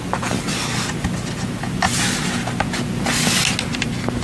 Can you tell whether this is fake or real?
real